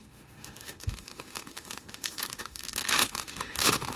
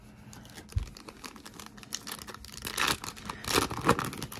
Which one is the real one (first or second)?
second